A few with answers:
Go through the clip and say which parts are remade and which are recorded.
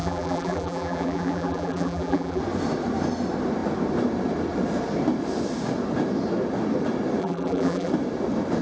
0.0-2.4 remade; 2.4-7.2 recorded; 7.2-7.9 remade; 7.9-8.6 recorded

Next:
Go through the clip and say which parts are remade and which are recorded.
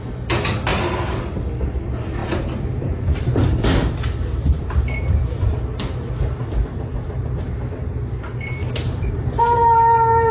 0.0-0.7 recorded; 0.7-1.2 remade; 1.2-2.2 recorded; 2.2-7.4 remade; 7.4-8.6 recorded; 8.6-9.4 remade; 9.4-10.3 recorded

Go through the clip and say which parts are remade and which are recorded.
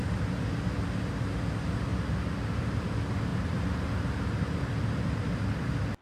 0.0-3.3 recorded; 3.3-4.2 remade; 4.2-6.0 recorded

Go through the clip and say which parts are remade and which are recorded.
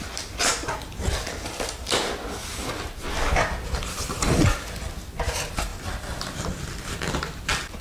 0.0-7.8 remade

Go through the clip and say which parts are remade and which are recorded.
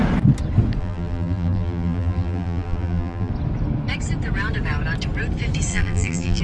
0.0-0.8 recorded; 0.8-3.3 remade; 3.3-5.7 recorded; 5.7-6.4 remade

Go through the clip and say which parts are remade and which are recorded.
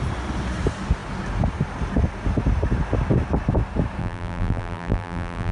0.0-4.0 recorded; 4.0-5.5 remade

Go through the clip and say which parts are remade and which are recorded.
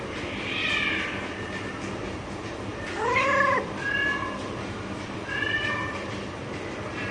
0.0-2.7 recorded; 2.7-5.7 remade; 5.7-7.1 recorded